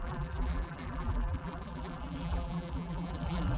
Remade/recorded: remade